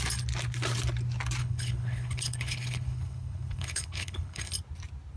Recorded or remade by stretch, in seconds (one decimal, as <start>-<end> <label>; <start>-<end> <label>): 0.0-1.4 recorded; 1.4-4.5 remade; 4.5-5.2 recorded